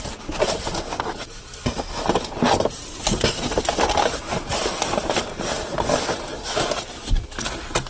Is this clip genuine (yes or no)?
yes